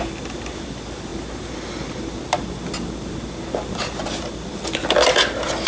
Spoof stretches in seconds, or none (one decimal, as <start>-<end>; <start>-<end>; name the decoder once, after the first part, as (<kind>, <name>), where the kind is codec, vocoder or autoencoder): none